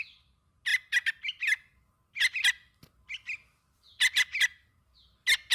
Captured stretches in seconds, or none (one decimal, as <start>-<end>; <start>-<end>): 0.0-5.5